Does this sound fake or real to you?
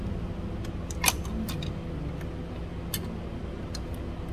real